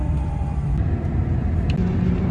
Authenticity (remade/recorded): remade